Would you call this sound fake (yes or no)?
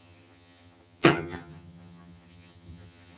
yes